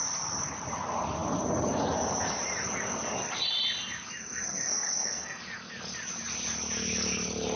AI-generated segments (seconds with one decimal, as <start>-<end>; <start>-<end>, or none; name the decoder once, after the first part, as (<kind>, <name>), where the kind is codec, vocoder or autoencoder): 4.2-5.4 (codec, SNAC)